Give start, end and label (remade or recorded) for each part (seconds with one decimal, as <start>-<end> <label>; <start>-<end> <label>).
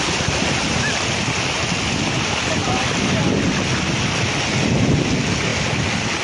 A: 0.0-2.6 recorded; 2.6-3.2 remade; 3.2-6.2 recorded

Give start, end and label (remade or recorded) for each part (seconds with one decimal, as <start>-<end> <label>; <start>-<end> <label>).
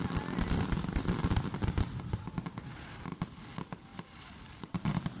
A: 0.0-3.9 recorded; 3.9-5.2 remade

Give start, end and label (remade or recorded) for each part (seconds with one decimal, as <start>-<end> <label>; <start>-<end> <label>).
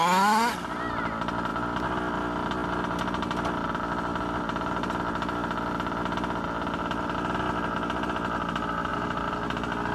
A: 0.0-8.9 recorded; 8.9-9.4 remade; 9.4-9.9 recorded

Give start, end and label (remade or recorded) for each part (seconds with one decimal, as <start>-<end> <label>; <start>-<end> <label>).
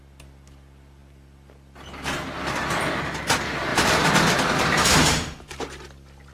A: 0.0-3.7 recorded; 3.7-5.8 remade; 5.8-6.3 recorded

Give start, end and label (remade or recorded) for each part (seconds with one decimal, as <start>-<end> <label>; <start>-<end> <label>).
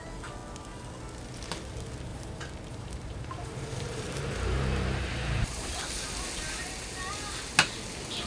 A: 0.0-2.1 recorded; 2.1-5.8 remade; 5.8-8.3 recorded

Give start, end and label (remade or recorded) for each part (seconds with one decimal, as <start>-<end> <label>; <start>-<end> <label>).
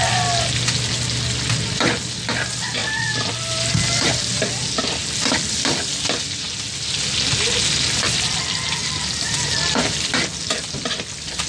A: 0.0-8.8 recorded; 8.8-9.5 remade; 9.5-11.5 recorded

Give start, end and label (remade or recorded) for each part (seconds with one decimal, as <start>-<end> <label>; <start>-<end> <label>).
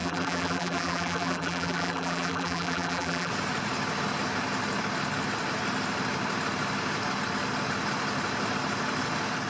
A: 0.0-3.3 remade; 3.3-9.5 recorded